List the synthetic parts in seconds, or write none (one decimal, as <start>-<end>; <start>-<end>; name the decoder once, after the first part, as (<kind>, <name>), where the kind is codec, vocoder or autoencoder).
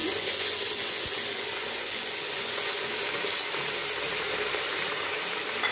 0.0-2.9 (vocoder, Vocos)